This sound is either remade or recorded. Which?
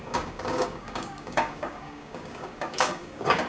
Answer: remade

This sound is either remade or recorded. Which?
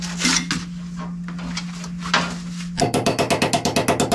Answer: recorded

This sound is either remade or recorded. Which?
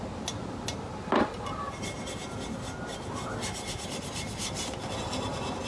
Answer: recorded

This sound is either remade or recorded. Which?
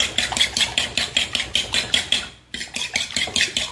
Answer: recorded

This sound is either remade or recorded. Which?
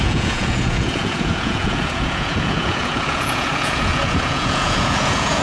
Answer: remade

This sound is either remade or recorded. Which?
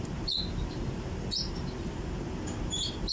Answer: recorded